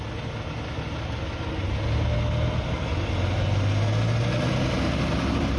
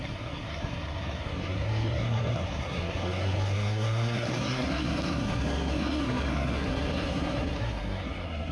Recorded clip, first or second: first